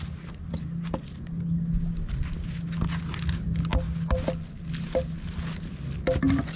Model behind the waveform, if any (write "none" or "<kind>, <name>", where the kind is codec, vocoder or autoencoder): none